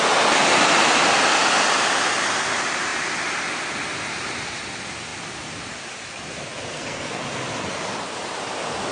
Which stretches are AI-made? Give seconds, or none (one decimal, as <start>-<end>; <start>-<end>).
6.7-7.2